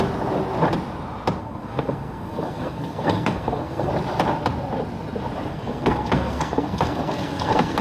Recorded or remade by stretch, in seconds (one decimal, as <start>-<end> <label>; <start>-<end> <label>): 0.0-1.4 recorded; 1.4-3.9 remade; 3.9-5.5 recorded; 5.5-7.8 remade